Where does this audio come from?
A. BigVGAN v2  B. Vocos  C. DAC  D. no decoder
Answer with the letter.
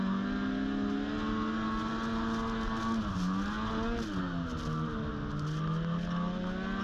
D